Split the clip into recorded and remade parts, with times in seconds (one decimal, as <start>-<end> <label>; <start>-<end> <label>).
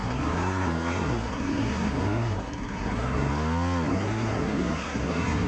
0.0-3.3 remade; 3.3-3.9 recorded; 3.9-5.5 remade